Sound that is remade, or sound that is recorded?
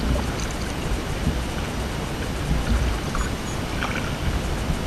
recorded